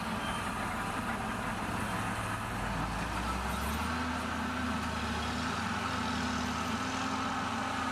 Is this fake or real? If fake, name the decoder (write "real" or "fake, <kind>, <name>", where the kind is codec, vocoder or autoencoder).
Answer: real